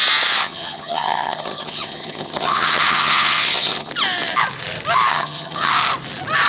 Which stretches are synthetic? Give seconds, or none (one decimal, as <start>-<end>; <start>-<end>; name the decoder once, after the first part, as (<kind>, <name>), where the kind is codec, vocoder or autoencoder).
0.4-3.9 (vocoder, HiFi-GAN); 5.1-5.7